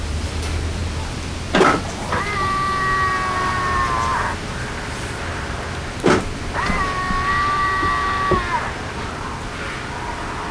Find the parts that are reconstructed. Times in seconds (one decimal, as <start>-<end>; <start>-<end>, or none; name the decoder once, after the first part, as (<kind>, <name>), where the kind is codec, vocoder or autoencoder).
none